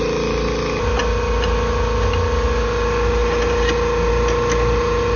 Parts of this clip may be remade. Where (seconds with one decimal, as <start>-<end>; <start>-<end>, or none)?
none